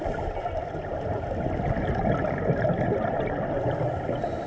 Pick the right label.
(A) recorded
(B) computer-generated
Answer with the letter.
A